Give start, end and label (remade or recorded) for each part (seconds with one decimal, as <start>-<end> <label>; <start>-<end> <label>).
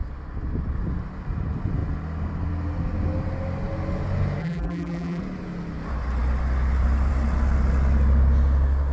0.0-4.4 recorded; 4.4-5.2 remade; 5.2-8.9 recorded